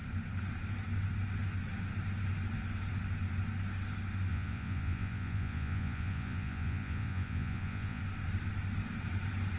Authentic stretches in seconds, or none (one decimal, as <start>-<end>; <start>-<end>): 0.0-4.3; 8.0-9.6